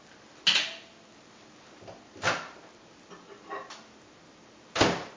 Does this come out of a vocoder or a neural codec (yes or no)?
no